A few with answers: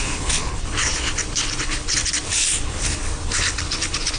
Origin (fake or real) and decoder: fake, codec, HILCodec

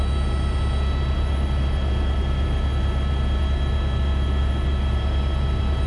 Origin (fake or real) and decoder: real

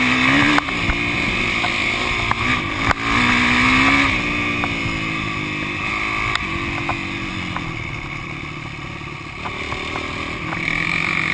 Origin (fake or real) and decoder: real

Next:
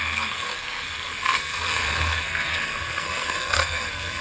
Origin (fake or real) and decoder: fake, codec, SNAC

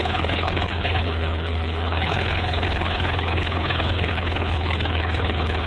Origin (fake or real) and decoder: fake, codec, HILCodec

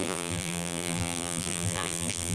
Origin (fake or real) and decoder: fake, vocoder, BigVGAN v2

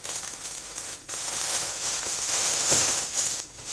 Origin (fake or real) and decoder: fake, autoencoder, DAC-VAE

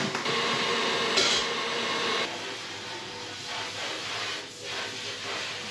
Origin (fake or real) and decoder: real